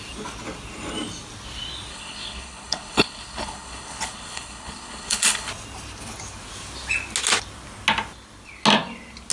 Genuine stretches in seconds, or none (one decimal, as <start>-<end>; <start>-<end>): 0.0-1.9; 5.5-9.3